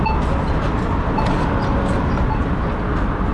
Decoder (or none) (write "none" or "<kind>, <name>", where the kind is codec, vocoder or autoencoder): none